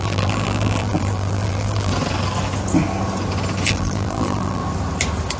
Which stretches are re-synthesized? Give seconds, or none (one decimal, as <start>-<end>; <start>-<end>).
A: 0.0-1.9; 3.7-4.6